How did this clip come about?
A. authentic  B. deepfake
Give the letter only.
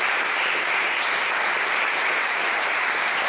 B